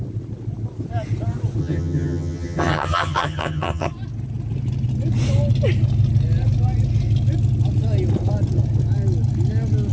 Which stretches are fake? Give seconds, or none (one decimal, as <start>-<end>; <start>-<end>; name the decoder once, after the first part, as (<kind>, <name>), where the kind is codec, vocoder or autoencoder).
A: 1.6-3.9 (vocoder, HiFi-GAN)